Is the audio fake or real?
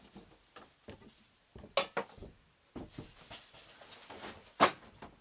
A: real